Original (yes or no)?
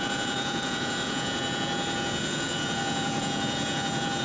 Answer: no